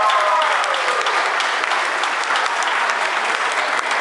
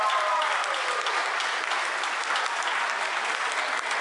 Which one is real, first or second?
second